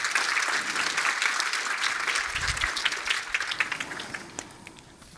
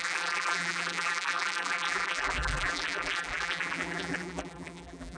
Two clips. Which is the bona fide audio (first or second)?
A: first